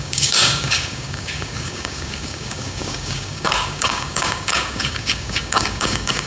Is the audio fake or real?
fake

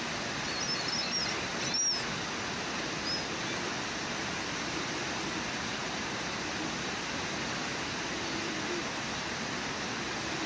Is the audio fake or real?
real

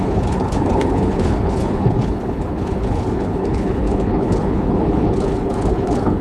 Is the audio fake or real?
fake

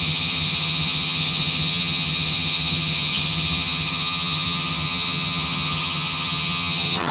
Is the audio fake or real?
fake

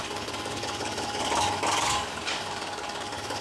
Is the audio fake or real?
fake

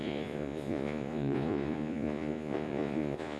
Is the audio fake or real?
fake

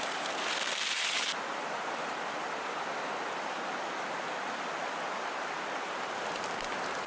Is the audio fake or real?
real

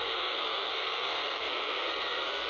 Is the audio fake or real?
fake